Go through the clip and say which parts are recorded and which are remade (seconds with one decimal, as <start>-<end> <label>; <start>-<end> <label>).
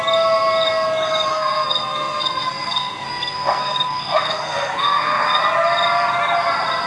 0.0-1.3 recorded; 1.3-5.4 remade; 5.4-6.9 recorded